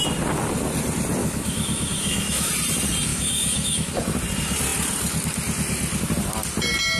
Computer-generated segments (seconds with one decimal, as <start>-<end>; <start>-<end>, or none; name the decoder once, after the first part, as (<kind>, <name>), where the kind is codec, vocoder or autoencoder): 1.2-2.5 (autoencoder, DAC-VAE); 3.1-3.9